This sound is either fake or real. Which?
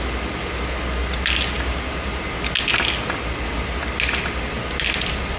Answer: real